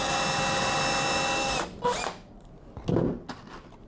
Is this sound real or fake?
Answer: real